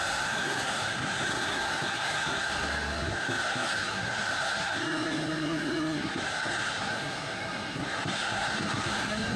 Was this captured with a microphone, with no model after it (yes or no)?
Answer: no